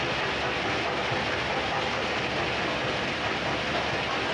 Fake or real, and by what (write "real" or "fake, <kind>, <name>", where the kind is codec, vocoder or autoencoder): real